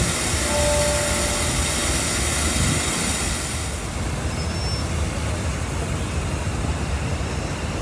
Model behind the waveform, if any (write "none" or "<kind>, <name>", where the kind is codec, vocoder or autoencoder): none